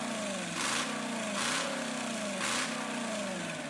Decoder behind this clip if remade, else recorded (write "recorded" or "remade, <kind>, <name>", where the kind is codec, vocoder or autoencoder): recorded